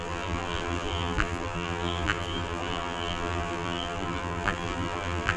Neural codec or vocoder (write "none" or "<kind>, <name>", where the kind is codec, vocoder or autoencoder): vocoder, BigVGAN v2